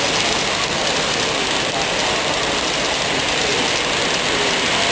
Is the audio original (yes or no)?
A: yes